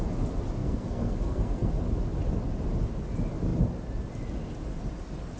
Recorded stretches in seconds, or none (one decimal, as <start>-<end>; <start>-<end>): 0.0-0.6; 1.7-5.4